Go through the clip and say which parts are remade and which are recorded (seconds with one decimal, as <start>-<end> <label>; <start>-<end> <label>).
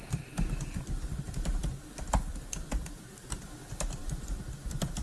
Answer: 0.0-3.0 remade; 3.0-5.0 recorded